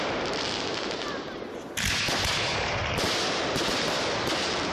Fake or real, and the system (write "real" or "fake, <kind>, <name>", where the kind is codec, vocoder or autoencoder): real